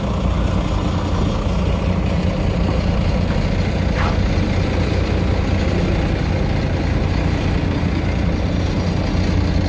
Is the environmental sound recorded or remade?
recorded